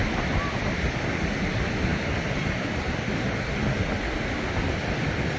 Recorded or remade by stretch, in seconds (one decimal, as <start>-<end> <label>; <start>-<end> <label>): 0.0-5.4 recorded